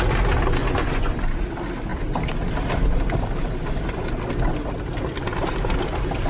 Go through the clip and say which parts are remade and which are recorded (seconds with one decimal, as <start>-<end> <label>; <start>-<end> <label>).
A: 0.0-0.6 recorded; 0.6-1.2 remade; 1.2-6.3 recorded